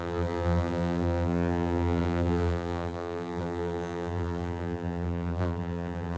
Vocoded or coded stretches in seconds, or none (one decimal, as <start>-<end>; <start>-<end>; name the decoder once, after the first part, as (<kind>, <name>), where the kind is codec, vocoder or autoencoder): 0.0-6.2 (vocoder, BigVGAN v2)